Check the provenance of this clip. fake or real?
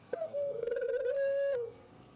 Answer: fake